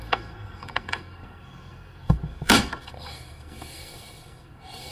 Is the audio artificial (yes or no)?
yes